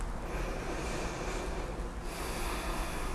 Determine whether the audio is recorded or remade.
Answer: recorded